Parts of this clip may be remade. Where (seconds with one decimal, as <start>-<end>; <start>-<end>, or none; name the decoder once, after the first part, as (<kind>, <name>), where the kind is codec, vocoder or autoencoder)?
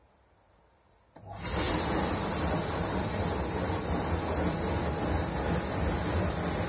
none